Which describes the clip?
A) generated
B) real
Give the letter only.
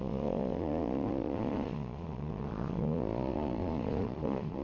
A